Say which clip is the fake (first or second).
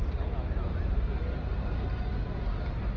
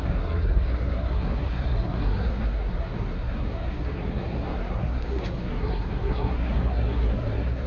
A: second